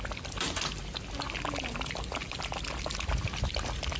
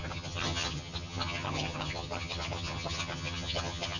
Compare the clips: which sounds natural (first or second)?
first